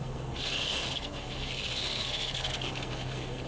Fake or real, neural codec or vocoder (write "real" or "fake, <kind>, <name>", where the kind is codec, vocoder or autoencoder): fake, codec, SNAC